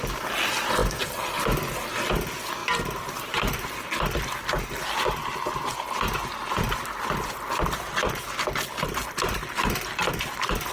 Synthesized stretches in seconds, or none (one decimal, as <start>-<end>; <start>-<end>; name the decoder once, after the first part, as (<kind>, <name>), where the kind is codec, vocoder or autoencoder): 2.6-4.5 (vocoder, BigVGAN v2)

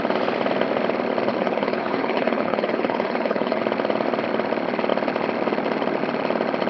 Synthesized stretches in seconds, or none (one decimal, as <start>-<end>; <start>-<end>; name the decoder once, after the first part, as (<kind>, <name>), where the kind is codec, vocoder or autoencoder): 1.3-3.6 (codec, HILCodec)